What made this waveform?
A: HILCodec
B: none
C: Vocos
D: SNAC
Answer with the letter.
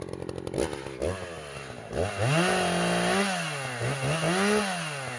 B